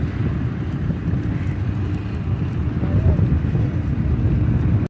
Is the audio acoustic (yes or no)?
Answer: yes